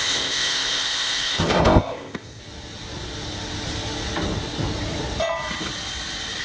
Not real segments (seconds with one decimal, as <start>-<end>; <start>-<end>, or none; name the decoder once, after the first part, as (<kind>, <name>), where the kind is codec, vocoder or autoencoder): 0.0-2.4 (codec, ZipCodec)